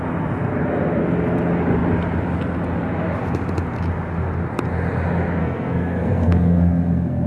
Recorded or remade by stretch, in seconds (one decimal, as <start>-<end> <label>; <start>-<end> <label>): 0.0-5.4 recorded; 5.4-7.3 remade